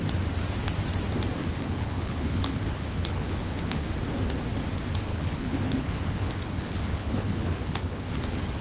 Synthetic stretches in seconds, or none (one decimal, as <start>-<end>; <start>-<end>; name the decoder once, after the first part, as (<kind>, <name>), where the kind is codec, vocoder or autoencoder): 1.4-3.9 (codec, HILCodec); 5.1-8.1